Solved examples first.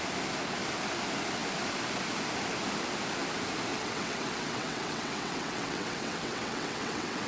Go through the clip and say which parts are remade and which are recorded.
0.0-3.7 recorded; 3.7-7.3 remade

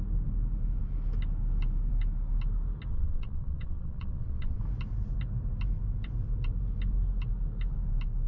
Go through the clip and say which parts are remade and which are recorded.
0.0-2.9 recorded; 2.9-4.6 remade; 4.6-8.3 recorded